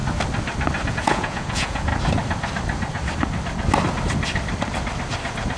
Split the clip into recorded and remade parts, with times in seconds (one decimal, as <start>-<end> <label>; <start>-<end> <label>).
0.0-0.9 recorded; 0.9-1.9 remade; 1.9-5.6 recorded